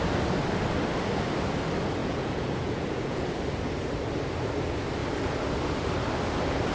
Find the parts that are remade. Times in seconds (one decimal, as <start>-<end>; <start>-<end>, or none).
2.0-3.3